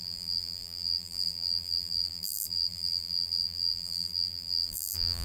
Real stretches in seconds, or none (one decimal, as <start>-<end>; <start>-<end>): none